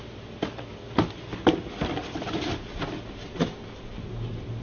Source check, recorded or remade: recorded